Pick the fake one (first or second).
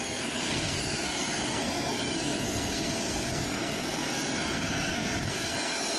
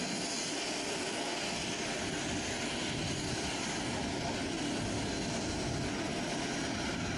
first